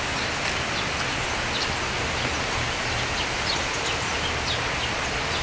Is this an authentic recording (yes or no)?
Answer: yes